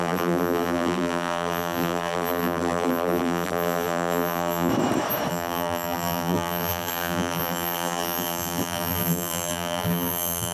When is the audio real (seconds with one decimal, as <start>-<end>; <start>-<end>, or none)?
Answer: 4.7-5.3